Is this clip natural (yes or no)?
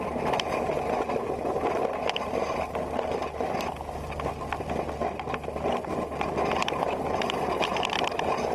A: yes